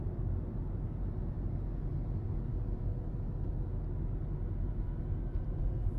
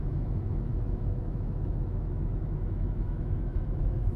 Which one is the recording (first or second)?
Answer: first